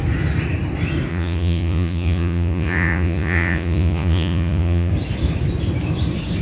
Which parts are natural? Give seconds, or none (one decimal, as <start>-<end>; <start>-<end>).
0.0-1.1; 4.9-6.4